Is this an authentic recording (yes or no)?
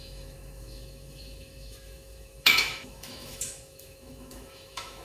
no